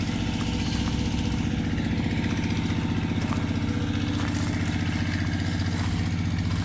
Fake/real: real